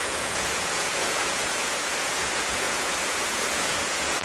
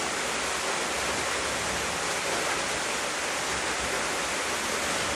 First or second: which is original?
second